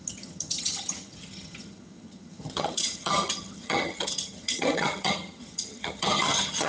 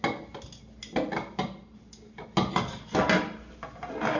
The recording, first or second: second